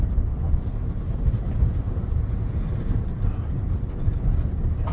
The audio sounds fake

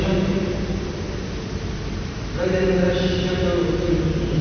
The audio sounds real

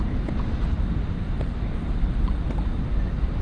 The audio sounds fake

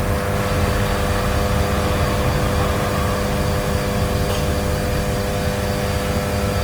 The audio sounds real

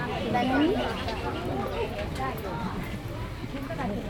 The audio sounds real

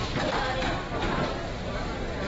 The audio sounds real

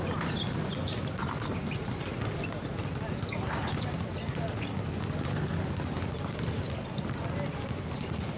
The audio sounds real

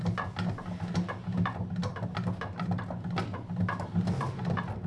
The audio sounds real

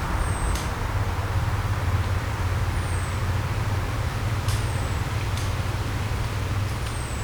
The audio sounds fake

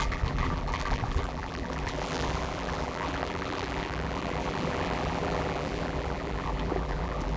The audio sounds fake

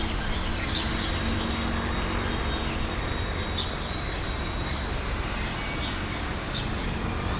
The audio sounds real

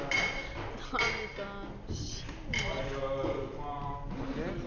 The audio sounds real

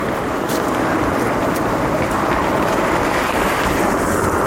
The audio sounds fake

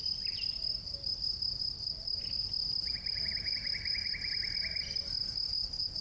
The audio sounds real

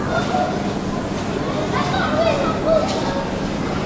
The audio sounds real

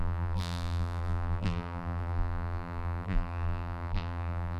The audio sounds fake